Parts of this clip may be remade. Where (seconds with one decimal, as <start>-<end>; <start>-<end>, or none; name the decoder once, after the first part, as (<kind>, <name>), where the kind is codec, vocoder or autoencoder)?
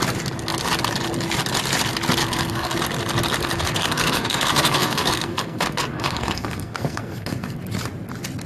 2.2-2.8 (codec, SNAC); 3.4-7.6